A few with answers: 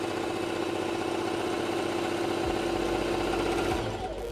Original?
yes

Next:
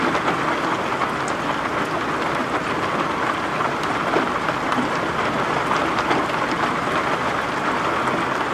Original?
yes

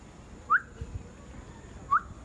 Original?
yes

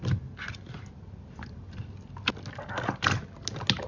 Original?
yes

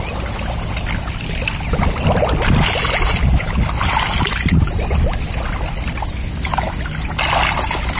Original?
yes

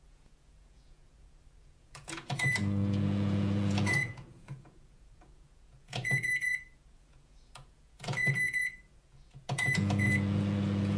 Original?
no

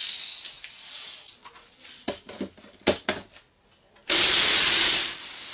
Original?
yes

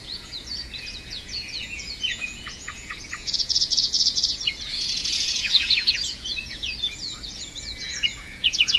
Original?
no